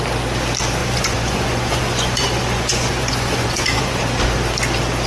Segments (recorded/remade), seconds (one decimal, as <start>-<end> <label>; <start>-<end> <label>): 0.0-0.8 recorded; 0.8-3.9 remade; 3.9-5.1 recorded